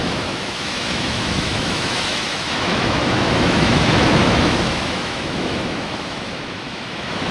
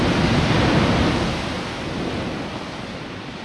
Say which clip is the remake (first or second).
first